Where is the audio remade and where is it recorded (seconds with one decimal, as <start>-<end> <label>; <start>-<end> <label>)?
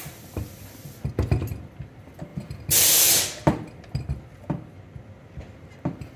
0.0-6.2 recorded